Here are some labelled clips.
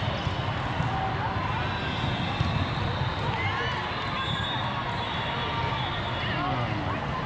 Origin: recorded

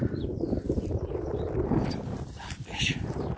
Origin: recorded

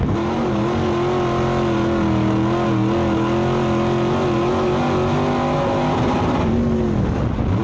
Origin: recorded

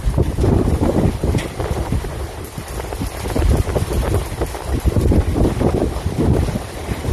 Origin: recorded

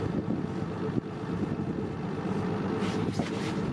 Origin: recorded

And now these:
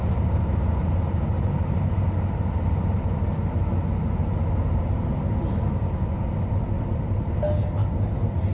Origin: recorded